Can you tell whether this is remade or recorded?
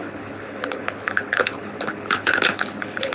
remade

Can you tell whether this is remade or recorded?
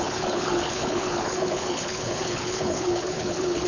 remade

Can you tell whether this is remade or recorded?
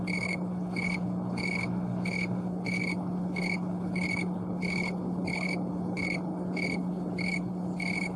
remade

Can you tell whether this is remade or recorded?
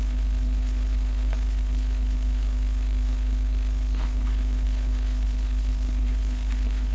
remade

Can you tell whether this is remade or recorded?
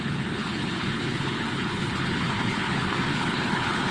remade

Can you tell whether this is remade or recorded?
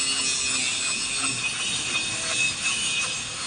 recorded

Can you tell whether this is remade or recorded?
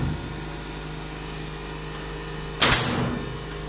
recorded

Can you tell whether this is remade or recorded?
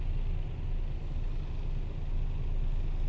recorded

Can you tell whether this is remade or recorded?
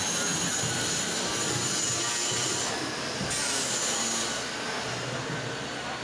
recorded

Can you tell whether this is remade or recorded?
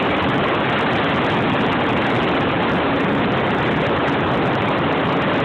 recorded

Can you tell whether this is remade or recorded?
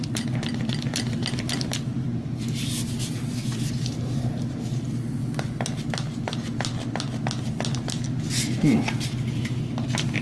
recorded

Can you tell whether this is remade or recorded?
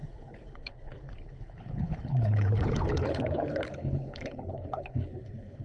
remade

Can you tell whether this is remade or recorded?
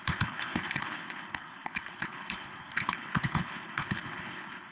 remade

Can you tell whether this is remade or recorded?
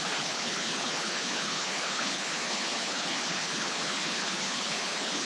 remade